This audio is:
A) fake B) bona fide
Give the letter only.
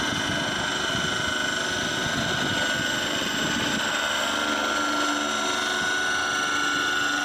B